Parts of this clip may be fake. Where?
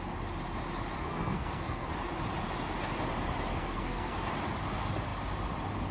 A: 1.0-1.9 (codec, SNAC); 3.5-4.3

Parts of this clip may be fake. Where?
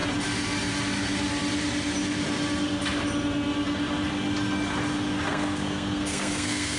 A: 5.3-6.8 (codec, SNAC)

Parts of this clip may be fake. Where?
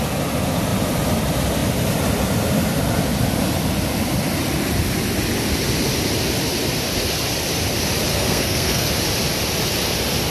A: 8.1-8.9 (codec, SNAC)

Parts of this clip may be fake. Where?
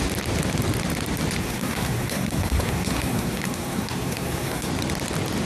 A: 1.4-4.7 (codec, SNAC)